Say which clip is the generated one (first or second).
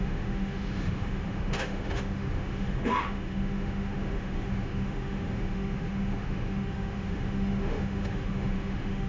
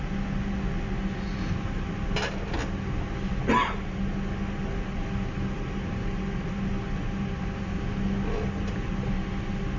first